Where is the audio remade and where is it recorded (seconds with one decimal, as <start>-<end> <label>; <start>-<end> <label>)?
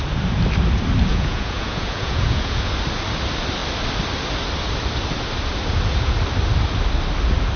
0.0-1.1 recorded; 1.1-2.7 remade; 2.7-7.6 recorded